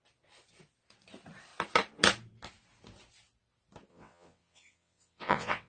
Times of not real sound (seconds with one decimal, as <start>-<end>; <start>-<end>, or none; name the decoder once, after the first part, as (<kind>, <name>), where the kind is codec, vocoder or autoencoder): 3.9-5.7 (vocoder, WaveNeXt)